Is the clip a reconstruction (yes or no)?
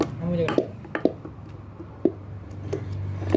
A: no